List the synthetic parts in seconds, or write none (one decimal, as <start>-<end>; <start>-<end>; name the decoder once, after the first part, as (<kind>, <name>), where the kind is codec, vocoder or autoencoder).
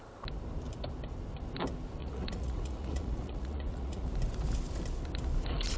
2.0-4.1 (vocoder, Vocos)